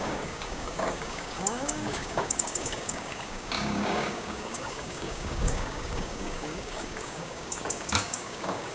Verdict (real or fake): fake